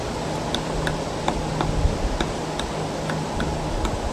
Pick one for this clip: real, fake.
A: real